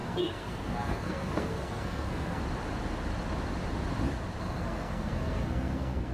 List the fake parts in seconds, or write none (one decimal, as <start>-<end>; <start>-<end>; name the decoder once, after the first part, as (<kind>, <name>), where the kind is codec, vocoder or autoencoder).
0.0-2.4 (codec, SNAC); 4.4-6.1